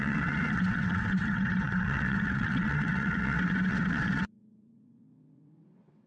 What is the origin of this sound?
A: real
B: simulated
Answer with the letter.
B